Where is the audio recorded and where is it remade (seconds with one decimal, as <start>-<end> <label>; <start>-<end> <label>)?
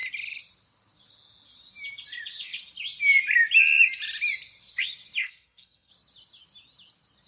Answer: 0.0-5.2 recorded; 5.2-5.9 remade; 5.9-7.3 recorded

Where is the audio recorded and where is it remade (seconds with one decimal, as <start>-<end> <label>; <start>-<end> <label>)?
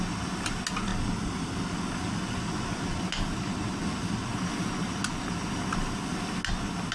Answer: 0.0-6.9 recorded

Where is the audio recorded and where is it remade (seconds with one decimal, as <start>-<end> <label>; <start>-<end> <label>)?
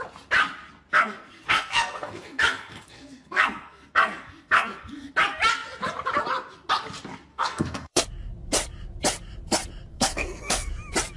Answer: 0.0-0.9 recorded; 0.9-5.1 remade; 5.1-7.3 recorded; 7.3-8.0 remade; 8.0-9.9 recorded; 9.9-10.7 remade; 10.7-11.2 recorded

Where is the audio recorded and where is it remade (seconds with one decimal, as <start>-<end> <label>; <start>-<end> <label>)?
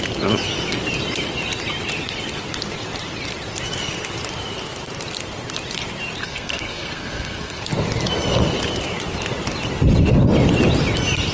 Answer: 0.0-6.2 recorded; 6.2-7.6 remade; 7.6-11.3 recorded